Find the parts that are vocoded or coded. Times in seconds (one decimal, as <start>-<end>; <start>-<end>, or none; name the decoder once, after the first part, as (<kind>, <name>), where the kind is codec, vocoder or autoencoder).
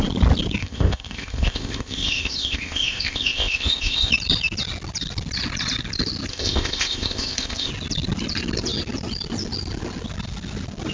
0.6-4.1 (codec, ZipCodec); 6.3-7.7